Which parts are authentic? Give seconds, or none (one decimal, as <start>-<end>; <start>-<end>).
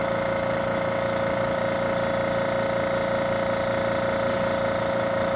1.6-4.8